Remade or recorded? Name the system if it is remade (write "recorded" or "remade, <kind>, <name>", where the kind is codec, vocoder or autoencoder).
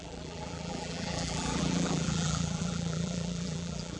remade, vocoder, BigVGAN v2